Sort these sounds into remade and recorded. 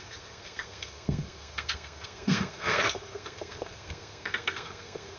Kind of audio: remade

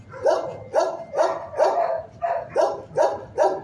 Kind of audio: recorded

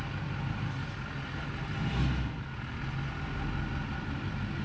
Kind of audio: recorded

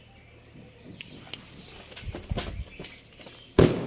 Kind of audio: recorded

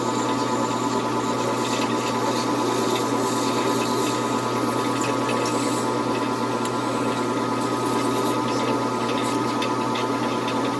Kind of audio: recorded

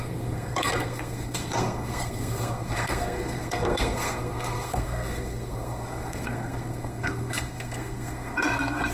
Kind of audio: remade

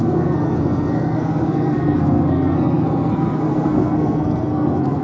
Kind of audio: remade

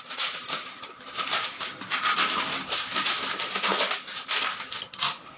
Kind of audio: recorded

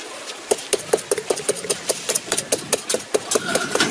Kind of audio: recorded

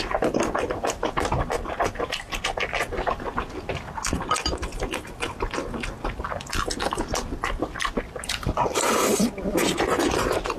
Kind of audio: recorded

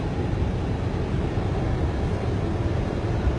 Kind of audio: recorded